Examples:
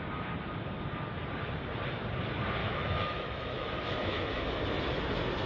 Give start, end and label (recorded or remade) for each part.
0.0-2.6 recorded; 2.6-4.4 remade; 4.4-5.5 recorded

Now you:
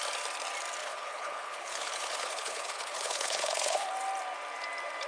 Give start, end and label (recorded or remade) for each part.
0.0-0.8 recorded; 0.8-3.9 remade; 3.9-5.1 recorded

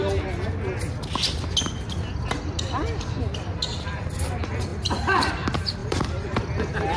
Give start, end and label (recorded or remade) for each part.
0.0-4.7 recorded; 4.7-5.3 remade; 5.3-5.8 recorded; 5.8-6.4 remade; 6.4-7.0 recorded